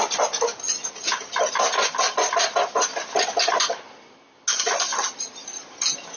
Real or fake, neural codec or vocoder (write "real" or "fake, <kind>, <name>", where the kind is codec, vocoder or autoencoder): real